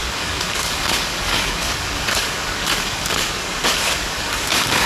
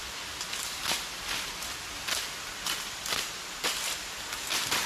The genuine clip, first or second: second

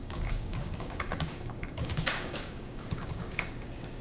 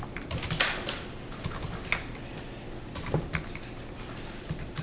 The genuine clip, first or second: second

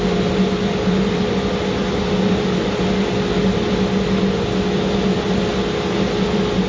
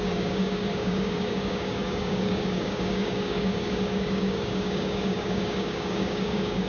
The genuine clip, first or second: first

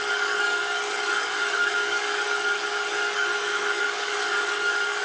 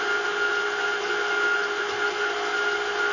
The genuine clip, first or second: second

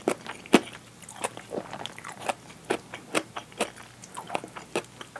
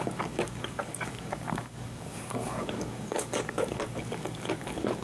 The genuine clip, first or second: first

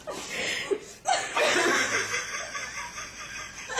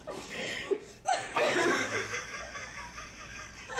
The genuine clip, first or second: first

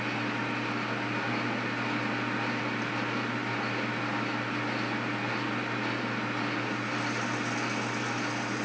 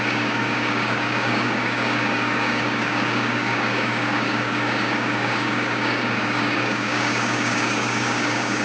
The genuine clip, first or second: first